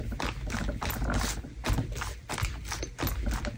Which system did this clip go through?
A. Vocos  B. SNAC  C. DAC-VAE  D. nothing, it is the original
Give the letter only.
D